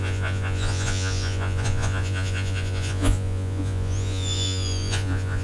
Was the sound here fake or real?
fake